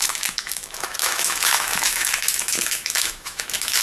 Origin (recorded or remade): remade